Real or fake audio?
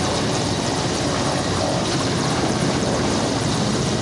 fake